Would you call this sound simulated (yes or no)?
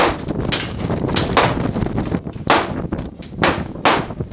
no